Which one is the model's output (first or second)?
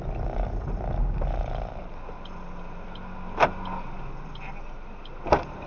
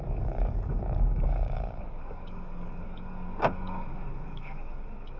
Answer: second